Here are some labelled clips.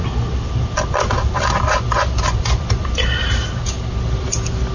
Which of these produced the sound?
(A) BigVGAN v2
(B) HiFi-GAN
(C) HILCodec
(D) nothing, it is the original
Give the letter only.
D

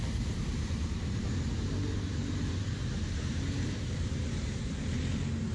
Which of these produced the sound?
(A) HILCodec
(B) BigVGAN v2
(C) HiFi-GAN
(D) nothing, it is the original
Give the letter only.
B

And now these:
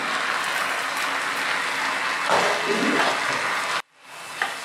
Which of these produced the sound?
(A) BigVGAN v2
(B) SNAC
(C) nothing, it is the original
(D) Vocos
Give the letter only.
C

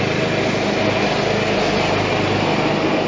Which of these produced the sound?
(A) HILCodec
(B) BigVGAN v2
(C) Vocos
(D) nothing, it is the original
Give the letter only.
D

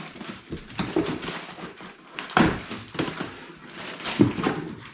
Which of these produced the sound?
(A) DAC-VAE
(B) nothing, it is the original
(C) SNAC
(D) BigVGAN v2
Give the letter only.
D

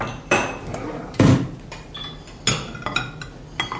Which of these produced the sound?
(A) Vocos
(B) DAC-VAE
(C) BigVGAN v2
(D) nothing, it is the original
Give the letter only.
D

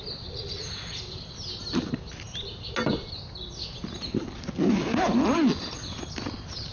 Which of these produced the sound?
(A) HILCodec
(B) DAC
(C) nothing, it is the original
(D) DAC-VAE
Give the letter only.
C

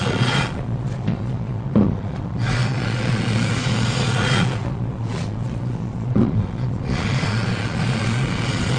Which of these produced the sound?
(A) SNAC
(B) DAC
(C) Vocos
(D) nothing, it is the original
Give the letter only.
C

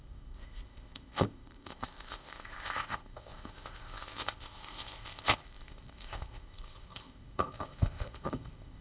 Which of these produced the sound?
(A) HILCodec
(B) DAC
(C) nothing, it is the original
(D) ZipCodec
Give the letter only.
D